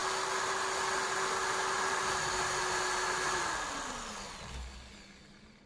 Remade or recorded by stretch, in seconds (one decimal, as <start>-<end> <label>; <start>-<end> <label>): 0.0-5.7 recorded